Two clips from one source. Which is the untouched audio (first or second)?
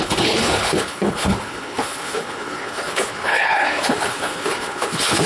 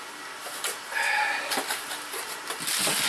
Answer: second